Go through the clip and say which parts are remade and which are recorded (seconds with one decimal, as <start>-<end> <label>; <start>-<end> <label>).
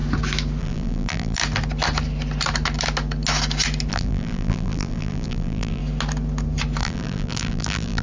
0.0-0.6 recorded; 0.6-1.4 remade; 1.4-3.9 recorded; 3.9-5.8 remade; 5.8-6.8 recorded; 6.8-8.0 remade